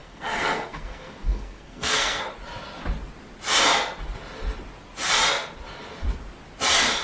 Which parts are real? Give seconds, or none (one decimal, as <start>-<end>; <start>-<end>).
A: 2.2-7.0